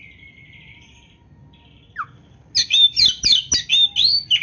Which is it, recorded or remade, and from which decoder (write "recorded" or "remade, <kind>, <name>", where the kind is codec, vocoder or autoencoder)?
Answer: recorded